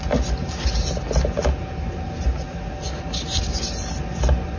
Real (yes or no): yes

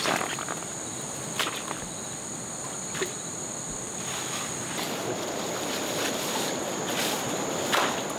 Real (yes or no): yes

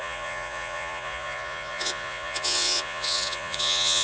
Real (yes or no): no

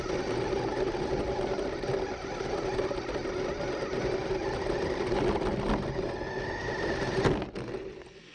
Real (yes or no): yes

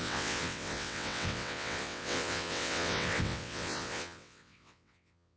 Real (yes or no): no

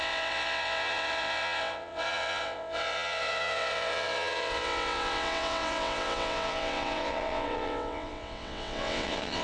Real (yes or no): no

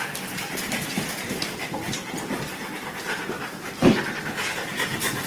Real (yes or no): yes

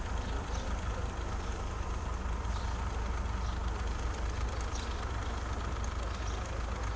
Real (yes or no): yes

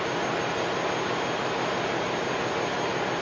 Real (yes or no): yes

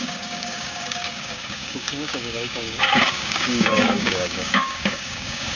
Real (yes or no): no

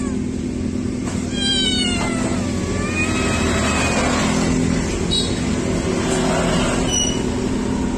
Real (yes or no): yes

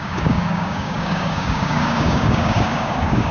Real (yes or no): no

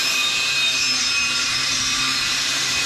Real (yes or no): no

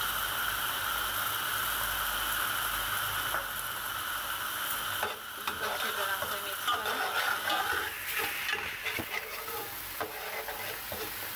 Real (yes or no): yes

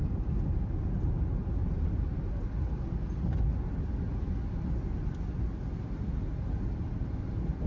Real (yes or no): yes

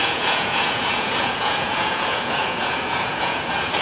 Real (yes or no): no